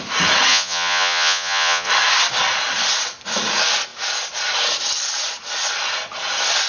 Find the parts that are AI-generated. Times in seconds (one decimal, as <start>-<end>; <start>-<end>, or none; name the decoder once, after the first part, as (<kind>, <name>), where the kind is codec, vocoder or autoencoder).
0.5-1.9 (vocoder, Vocos)